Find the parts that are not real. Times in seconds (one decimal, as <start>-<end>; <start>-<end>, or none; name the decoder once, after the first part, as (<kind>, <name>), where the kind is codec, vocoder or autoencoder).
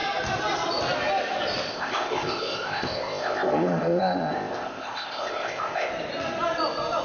1.7-5.9 (codec, ZipCodec)